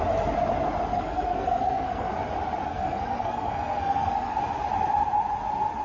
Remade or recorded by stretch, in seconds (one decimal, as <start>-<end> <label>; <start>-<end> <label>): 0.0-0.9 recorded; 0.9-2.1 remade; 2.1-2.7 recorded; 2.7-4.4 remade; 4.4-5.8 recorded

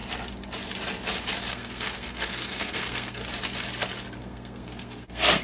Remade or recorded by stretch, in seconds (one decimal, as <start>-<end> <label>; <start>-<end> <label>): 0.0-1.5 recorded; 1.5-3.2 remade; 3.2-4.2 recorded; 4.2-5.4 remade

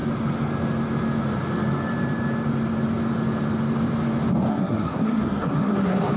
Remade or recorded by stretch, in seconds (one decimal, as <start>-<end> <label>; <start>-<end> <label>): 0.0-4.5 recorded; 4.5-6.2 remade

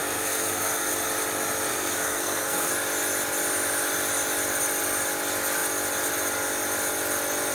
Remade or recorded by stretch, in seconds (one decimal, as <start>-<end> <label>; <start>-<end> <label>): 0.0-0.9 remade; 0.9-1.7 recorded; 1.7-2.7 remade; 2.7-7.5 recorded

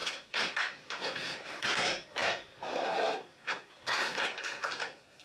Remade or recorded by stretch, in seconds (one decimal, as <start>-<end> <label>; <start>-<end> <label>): 0.0-5.2 remade

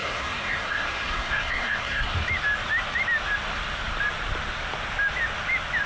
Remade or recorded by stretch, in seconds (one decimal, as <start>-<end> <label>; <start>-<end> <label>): 0.0-2.1 remade; 2.1-5.9 recorded

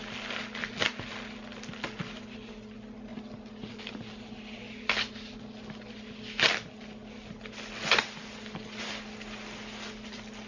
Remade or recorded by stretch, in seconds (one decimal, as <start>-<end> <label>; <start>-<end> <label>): 0.0-10.5 recorded

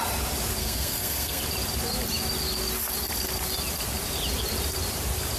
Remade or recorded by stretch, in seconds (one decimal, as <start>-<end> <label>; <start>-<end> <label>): 0.0-0.6 recorded; 0.6-1.4 remade; 1.4-5.4 recorded